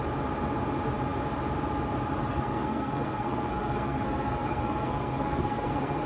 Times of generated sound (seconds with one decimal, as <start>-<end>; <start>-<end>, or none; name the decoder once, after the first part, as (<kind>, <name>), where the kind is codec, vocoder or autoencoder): 2.3-6.1 (codec, SNAC)